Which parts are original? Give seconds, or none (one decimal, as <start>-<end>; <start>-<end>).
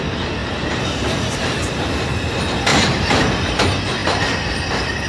0.0-0.4; 2.0-2.7; 3.5-4.0